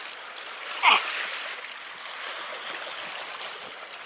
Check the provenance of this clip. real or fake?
real